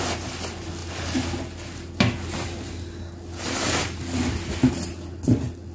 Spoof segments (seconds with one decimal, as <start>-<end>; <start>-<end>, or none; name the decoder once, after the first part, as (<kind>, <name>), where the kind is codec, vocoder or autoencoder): none